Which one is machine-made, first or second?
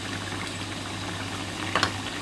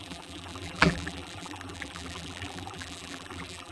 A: second